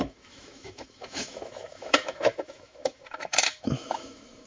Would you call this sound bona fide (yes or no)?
no